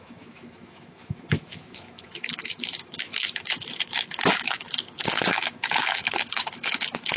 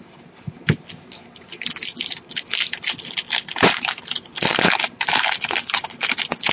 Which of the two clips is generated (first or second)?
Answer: first